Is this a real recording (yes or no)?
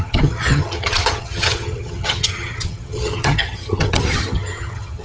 no